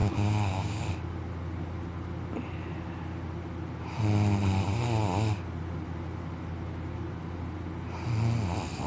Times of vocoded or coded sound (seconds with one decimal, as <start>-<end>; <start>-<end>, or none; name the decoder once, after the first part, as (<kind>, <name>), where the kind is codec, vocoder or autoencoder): 0.0-0.8 (codec, DAC)